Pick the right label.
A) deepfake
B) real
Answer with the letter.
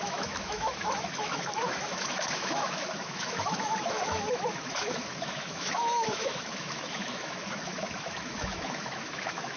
A